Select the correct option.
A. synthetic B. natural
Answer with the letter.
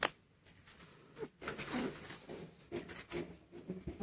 B